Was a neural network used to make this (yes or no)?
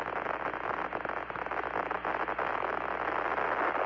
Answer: no